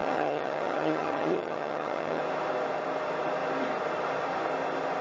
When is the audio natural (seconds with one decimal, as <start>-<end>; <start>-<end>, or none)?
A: 2.2-5.0